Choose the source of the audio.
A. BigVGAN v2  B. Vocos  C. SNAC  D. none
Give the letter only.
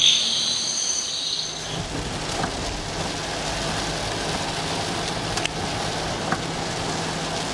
D